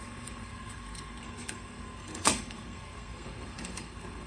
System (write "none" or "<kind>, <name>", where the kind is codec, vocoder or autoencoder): codec, SNAC